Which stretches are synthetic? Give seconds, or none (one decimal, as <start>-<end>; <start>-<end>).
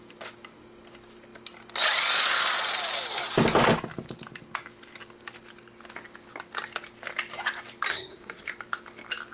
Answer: 7.9-8.5